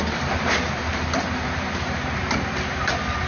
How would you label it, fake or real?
real